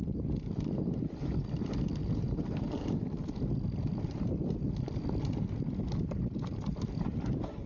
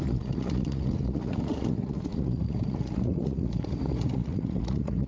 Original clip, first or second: first